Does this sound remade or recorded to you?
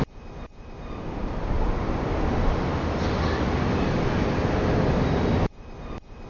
recorded